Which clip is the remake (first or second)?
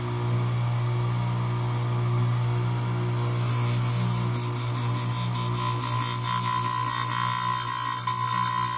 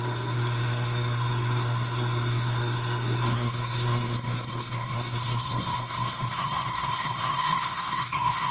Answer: second